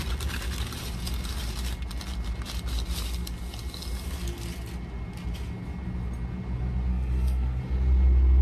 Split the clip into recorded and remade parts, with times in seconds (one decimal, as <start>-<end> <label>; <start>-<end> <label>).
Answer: 0.0-6.9 recorded; 6.9-7.6 remade; 7.6-8.4 recorded